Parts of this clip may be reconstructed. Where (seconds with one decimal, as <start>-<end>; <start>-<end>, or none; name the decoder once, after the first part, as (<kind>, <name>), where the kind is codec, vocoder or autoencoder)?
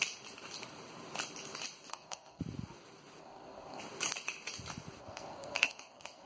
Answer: 1.9-2.4 (codec, SNAC); 3.2-3.8; 5.0-6.3